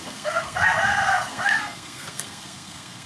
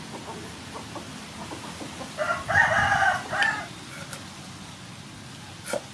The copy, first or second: first